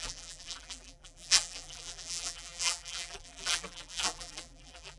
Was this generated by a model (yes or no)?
yes